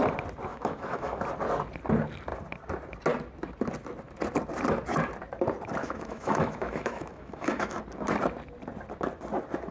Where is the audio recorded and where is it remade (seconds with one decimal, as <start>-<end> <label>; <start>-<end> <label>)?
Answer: 0.0-0.5 recorded; 0.5-1.2 remade; 1.2-5.8 recorded; 5.8-7.8 remade; 7.8-9.7 recorded